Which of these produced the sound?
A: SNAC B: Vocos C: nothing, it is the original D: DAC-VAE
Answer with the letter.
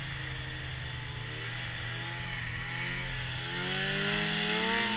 C